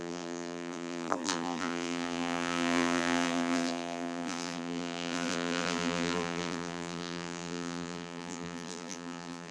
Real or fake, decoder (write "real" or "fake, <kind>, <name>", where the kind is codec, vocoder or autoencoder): fake, vocoder, BigVGAN v2